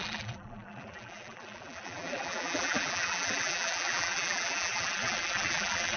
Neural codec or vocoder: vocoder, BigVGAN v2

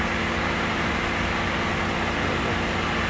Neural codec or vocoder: none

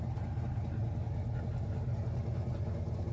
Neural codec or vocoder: none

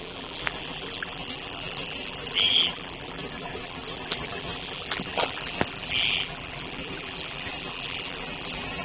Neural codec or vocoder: vocoder, BigVGAN v2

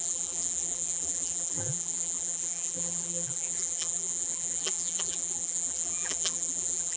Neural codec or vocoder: vocoder, BigVGAN v2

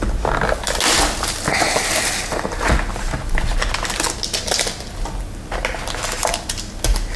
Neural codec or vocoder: none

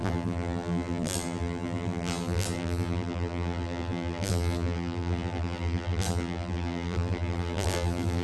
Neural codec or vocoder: vocoder, BigVGAN v2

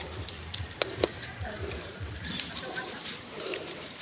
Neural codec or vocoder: vocoder, BigVGAN v2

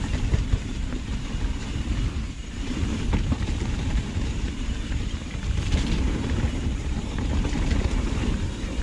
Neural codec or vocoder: vocoder, BigVGAN v2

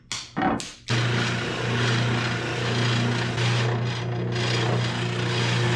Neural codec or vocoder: none